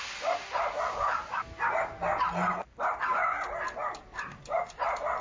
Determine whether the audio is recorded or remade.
recorded